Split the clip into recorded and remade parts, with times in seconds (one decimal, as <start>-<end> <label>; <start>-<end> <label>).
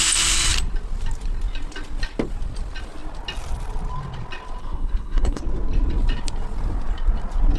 0.0-4.6 recorded; 4.6-5.4 remade; 5.4-7.6 recorded